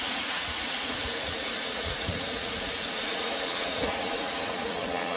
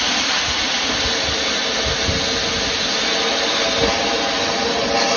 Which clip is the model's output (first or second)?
first